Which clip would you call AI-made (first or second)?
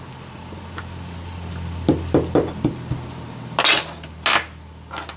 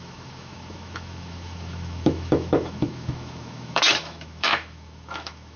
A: second